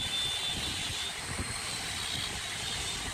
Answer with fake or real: real